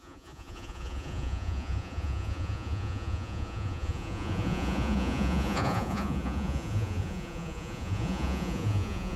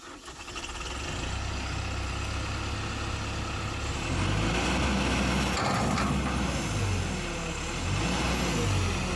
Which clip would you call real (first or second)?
second